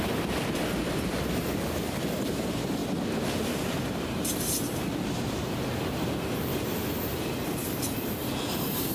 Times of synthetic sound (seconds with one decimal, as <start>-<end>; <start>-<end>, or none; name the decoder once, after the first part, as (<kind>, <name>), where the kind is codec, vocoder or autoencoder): 0.0-2.8 (vocoder, BigVGAN v2); 3.4-7.1; 7.7-8.9